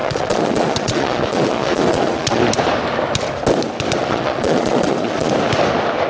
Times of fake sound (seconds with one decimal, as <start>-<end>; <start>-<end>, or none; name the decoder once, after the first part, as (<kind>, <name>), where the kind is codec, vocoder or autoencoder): 0.0-2.4 (vocoder, Vocos); 4.0-5.3